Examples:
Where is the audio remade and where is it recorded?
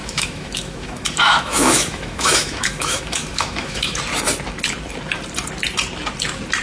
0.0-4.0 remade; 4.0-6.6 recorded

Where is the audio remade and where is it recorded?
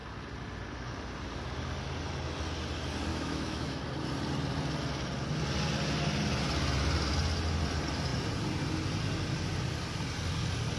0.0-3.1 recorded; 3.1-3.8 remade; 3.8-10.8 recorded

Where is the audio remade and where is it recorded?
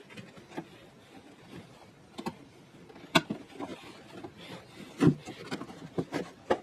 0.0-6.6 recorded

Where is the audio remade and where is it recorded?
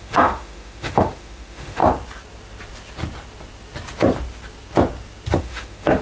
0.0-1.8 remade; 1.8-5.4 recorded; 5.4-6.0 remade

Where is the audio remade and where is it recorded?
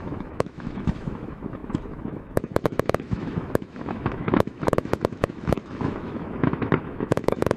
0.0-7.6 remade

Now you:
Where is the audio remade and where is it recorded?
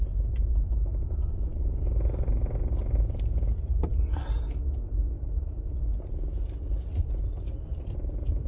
0.0-8.5 recorded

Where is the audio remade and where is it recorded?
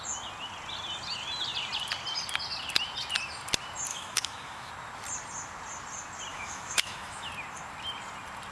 0.0-3.9 recorded; 3.9-4.7 remade; 4.7-6.3 recorded; 6.3-7.3 remade; 7.3-8.5 recorded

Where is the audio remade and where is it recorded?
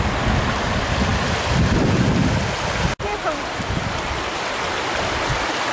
0.0-5.7 recorded